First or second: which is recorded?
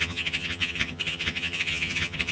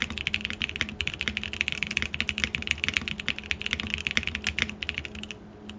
second